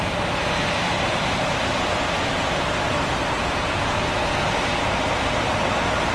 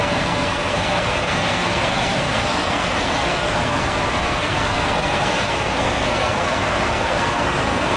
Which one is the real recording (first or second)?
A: first